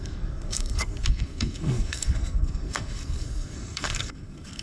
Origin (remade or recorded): remade